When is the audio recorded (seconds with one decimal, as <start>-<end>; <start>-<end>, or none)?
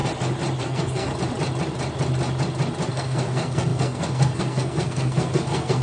0.0-0.6; 1.1-2.9